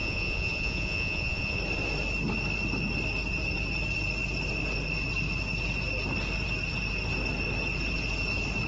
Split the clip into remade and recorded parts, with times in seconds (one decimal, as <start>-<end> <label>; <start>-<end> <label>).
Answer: 0.0-1.6 remade; 1.6-8.7 recorded